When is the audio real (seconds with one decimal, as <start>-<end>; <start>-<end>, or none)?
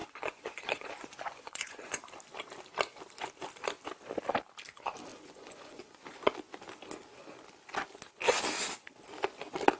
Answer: 2.0-5.1; 6.3-9.8